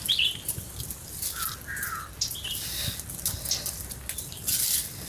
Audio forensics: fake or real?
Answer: real